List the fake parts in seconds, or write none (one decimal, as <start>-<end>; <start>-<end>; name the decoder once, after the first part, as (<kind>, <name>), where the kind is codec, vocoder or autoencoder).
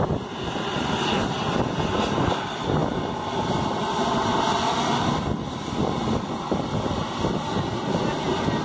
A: none